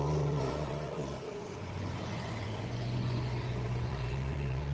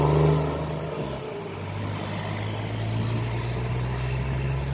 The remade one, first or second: first